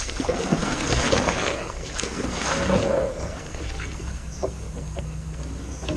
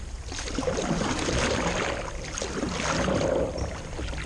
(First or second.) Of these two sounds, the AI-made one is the first